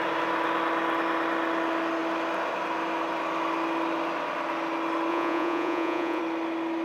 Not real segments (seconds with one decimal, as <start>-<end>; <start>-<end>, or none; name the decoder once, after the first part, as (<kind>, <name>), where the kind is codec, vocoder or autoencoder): 5.1-6.2 (vocoder, Vocos)